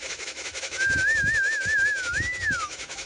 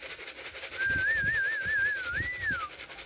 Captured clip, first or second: second